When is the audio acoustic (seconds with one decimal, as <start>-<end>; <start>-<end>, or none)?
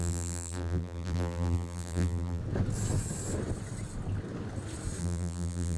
2.4-5.0